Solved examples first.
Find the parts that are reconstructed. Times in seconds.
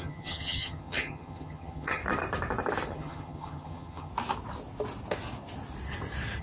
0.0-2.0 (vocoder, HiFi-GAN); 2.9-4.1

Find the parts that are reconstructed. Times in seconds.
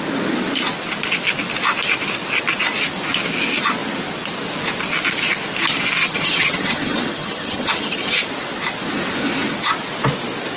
6.0-8.2 (vocoder, HiFi-GAN)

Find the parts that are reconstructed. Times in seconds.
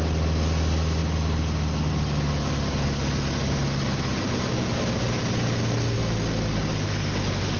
none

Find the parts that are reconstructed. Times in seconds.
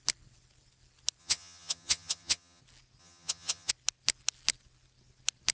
1.2-2.6 (vocoder, HiFi-GAN); 3.0-3.7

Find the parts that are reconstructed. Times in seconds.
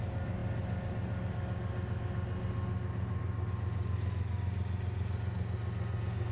none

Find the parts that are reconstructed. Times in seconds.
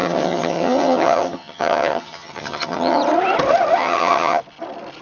0.0-3.0 (vocoder, HiFi-GAN); 3.8-4.4